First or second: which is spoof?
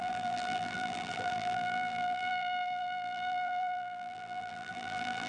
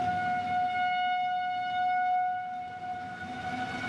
first